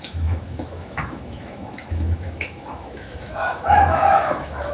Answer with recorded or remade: remade